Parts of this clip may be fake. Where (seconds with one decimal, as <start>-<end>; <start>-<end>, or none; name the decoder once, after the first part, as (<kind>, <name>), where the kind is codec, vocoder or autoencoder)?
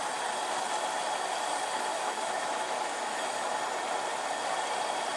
1.9-3.5 (autoencoder, DAC-VAE)